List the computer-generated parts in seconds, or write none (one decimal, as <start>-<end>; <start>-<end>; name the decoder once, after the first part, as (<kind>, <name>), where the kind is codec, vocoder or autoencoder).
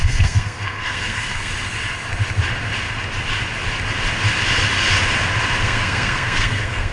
0.0-1.5 (codec, SNAC); 5.6-6.9